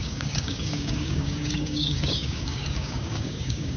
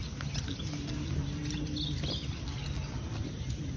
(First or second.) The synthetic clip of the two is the first